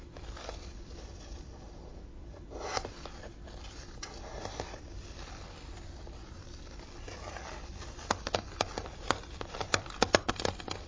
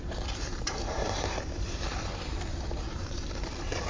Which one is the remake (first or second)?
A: second